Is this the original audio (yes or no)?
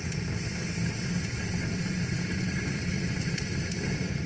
yes